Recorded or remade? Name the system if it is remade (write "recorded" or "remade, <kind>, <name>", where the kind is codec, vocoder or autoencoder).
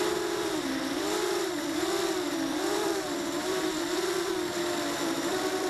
remade, vocoder, BigVGAN v2